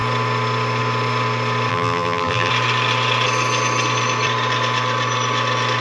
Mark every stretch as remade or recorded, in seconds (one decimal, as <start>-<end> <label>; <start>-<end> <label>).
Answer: 0.0-1.7 recorded; 1.7-2.5 remade; 2.5-5.8 recorded